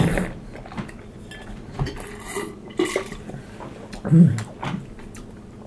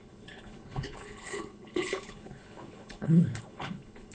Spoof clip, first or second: second